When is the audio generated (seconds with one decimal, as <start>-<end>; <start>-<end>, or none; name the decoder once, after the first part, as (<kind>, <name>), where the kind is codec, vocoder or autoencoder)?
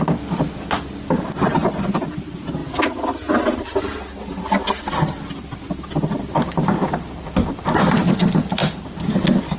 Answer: 1.6-2.2 (vocoder, BigVGAN v2); 2.6-3.8; 8.6-9.1